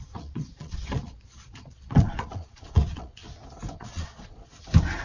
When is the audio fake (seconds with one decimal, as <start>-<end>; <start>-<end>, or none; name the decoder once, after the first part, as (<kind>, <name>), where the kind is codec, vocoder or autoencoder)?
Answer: 0.0-3.2 (vocoder, Vocos); 3.8-4.5